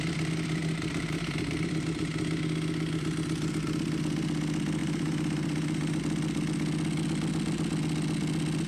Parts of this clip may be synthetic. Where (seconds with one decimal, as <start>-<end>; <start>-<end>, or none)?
0.6-1.8; 4.8-6.0